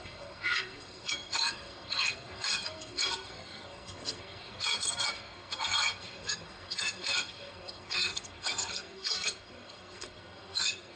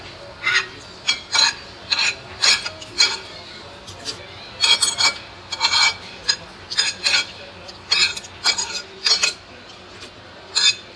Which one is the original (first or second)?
second